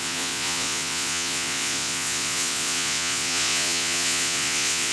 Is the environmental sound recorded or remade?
remade